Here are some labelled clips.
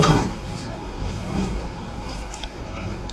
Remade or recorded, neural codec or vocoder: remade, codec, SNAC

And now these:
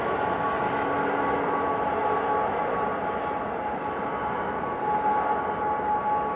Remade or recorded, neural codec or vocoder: recorded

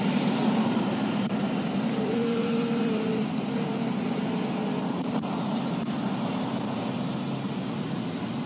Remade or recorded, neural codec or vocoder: remade, vocoder, BigVGAN v2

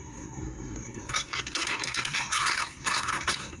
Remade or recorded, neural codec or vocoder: remade, codec, SNAC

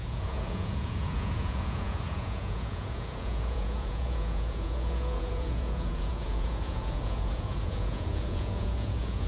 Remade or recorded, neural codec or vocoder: remade, vocoder, Vocos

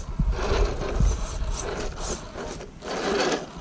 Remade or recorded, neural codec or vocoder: recorded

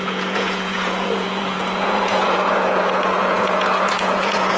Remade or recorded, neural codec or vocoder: remade, vocoder, Vocos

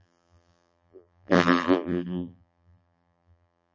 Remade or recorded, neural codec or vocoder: remade, vocoder, BigVGAN v2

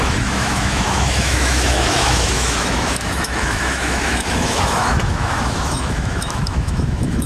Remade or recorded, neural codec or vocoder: remade, autoencoder, DAC-VAE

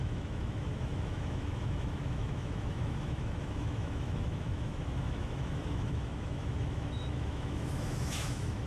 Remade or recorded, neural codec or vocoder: remade, autoencoder, DAC-VAE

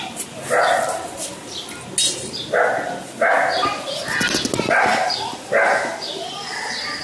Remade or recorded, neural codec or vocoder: recorded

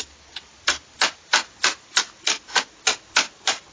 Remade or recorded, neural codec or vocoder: recorded